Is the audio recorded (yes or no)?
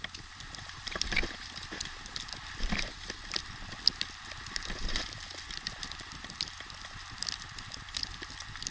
yes